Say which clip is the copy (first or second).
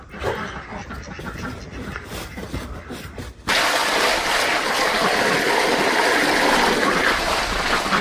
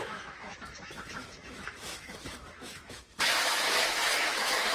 second